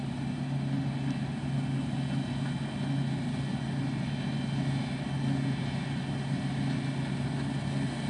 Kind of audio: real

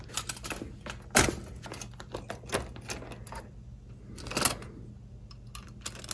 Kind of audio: real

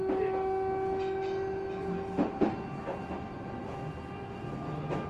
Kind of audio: real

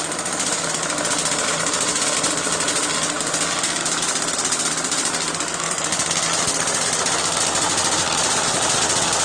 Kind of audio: real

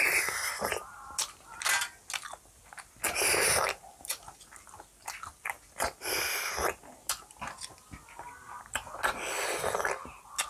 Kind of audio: real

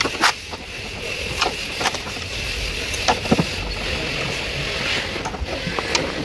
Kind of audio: real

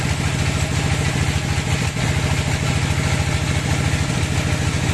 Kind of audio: real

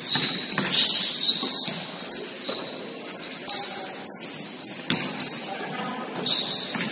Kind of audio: real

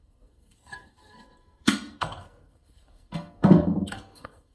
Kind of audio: fake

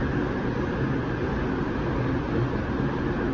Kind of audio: real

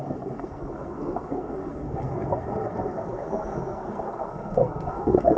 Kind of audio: fake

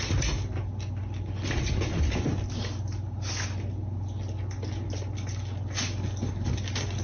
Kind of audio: real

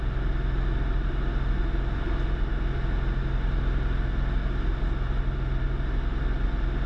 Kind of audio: real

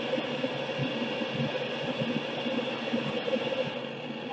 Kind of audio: real